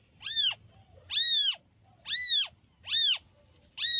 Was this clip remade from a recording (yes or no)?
no